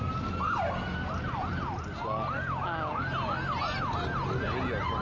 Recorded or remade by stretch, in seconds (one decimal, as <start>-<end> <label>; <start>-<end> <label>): 0.0-5.0 recorded